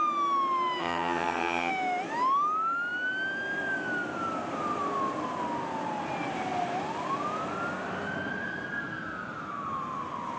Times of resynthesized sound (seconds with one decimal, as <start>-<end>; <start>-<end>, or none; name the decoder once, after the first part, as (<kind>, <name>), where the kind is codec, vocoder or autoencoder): 0.8-1.7 (vocoder, HiFi-GAN)